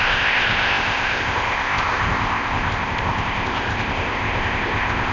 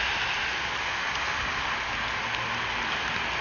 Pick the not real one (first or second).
first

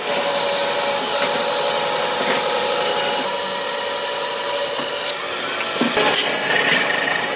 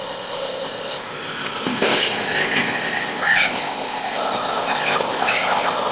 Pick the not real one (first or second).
second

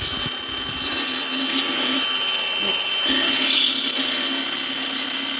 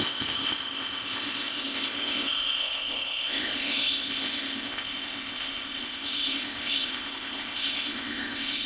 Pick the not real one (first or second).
second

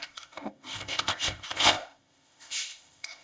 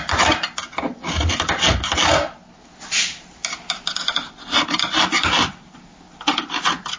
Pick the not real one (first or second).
first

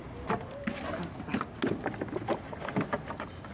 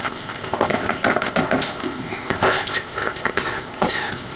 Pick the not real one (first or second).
second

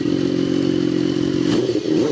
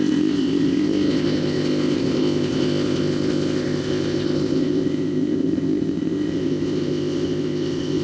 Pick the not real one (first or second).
second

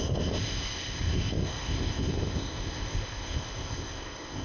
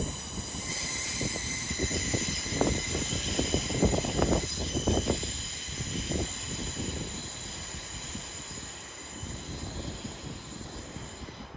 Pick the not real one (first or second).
first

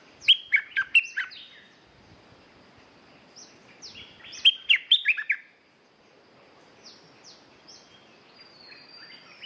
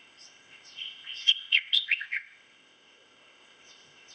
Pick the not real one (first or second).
second